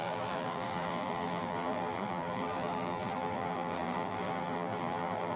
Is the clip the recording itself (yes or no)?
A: no